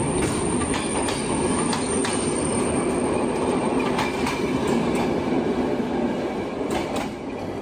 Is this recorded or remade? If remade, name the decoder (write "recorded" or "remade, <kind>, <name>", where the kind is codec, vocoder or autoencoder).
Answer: recorded